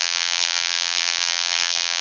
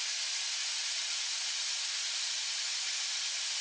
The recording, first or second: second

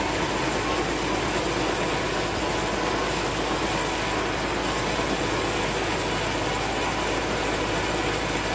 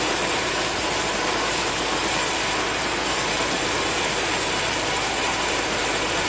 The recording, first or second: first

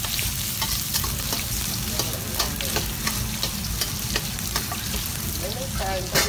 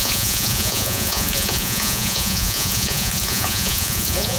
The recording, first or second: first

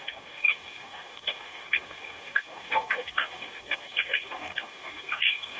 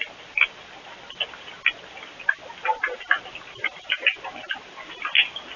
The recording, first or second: second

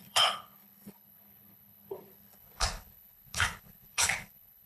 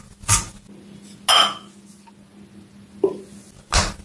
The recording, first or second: second